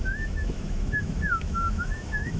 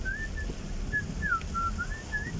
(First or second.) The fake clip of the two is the first